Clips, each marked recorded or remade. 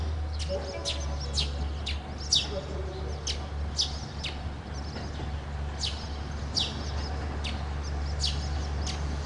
recorded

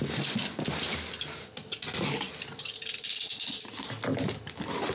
recorded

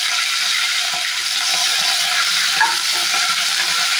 recorded